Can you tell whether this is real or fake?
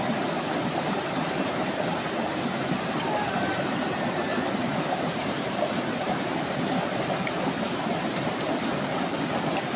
real